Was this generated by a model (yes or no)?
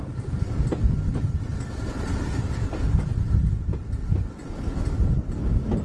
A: no